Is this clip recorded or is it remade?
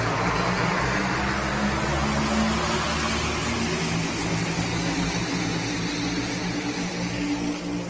recorded